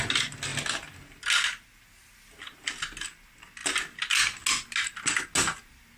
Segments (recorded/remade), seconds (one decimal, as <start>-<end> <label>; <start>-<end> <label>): 0.0-6.0 recorded